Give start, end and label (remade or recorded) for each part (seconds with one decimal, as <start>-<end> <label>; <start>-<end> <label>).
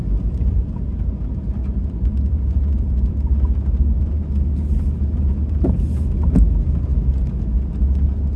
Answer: 0.0-1.6 recorded; 1.6-3.1 remade; 3.1-8.4 recorded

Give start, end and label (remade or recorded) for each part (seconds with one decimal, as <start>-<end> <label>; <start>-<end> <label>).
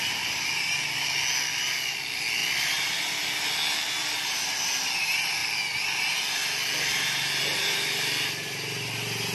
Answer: 0.0-9.3 recorded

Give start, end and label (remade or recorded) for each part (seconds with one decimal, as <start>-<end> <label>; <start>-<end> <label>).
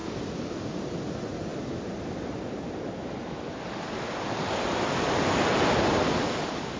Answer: 0.0-6.8 recorded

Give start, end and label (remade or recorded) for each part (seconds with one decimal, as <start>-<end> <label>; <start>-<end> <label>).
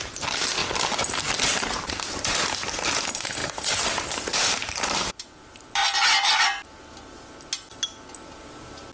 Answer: 0.0-0.6 remade; 0.6-1.7 recorded; 1.7-5.8 remade; 5.8-8.4 recorded; 8.4-8.9 remade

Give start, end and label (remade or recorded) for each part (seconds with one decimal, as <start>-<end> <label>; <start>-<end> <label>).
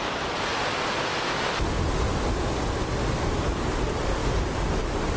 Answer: 0.0-0.5 remade; 0.5-1.3 recorded; 1.3-2.1 remade; 2.1-3.2 recorded; 3.2-4.2 remade; 4.2-4.8 recorded; 4.8-5.2 remade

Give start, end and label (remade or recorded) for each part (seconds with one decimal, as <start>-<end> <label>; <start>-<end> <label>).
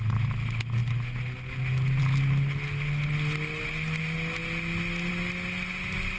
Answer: 0.0-6.2 recorded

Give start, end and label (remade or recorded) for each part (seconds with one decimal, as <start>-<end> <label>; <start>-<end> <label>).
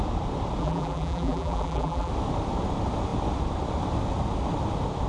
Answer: 0.0-0.6 recorded; 0.6-2.1 remade; 2.1-5.1 recorded